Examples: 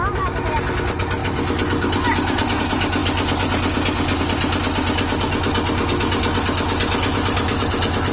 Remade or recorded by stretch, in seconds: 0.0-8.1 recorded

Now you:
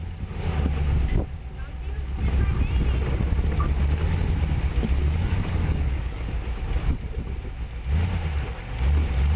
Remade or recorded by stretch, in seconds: 0.0-5.0 recorded; 5.0-6.3 remade; 6.3-9.4 recorded

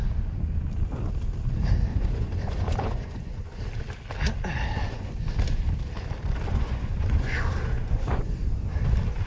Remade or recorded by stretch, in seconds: 0.0-1.9 recorded; 1.9-3.6 remade; 3.6-4.8 recorded; 4.8-5.3 remade; 5.3-6.5 recorded; 6.5-8.4 remade; 8.4-9.3 recorded

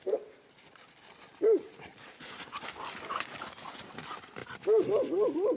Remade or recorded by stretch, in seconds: 0.0-5.6 recorded

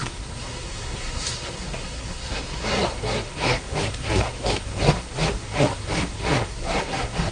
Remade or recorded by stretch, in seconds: 0.0-7.3 remade

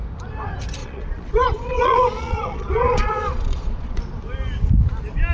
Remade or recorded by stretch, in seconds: 0.0-0.8 recorded; 0.8-4.0 remade; 4.0-5.3 recorded

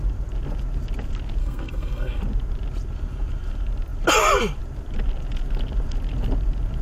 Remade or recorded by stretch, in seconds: 0.0-1.4 recorded; 1.4-2.2 remade; 2.2-6.8 recorded